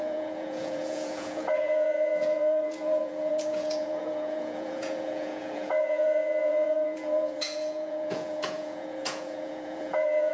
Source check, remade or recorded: remade